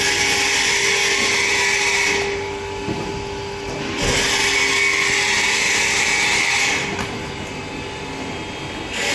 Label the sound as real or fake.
real